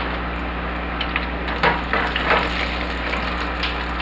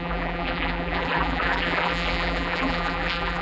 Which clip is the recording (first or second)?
first